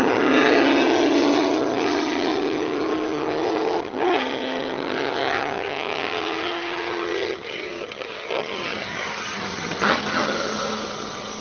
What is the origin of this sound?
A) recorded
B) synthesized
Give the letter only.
B